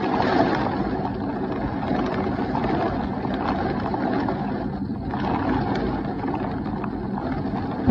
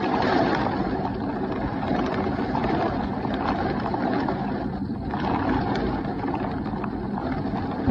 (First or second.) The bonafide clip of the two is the first